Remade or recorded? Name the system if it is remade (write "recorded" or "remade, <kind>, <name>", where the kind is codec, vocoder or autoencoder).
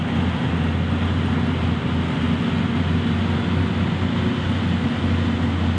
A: recorded